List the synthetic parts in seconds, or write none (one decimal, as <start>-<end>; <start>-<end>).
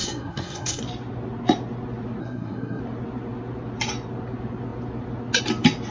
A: 0.0-0.8; 2.2-2.8